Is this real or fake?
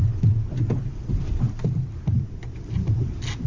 real